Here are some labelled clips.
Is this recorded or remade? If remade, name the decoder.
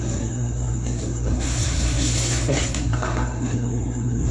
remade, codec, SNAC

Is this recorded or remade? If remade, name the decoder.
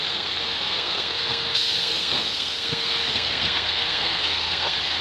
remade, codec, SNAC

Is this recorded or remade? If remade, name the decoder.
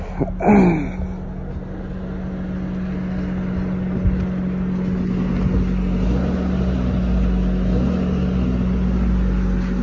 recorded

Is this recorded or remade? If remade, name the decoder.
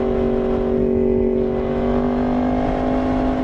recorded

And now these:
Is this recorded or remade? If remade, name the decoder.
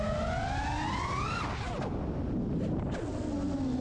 recorded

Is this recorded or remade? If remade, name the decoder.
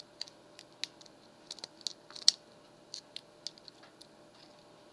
recorded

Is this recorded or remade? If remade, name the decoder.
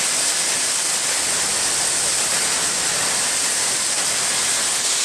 recorded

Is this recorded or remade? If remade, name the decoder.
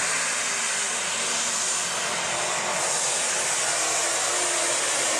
recorded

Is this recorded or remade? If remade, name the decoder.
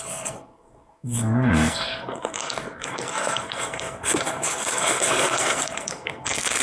remade, codec, SNAC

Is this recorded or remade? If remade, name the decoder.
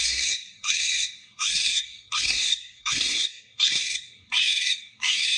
remade, codec, SNAC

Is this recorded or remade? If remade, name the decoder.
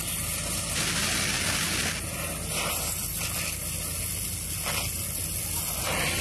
recorded